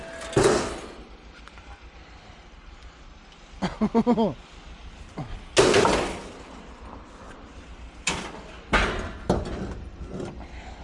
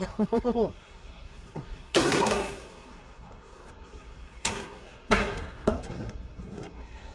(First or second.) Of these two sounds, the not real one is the second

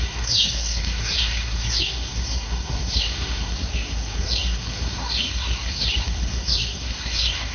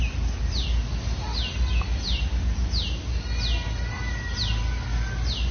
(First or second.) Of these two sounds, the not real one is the first